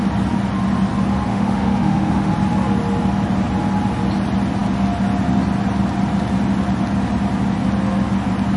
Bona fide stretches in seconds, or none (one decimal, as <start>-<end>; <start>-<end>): 0.0-1.3; 2.3-8.6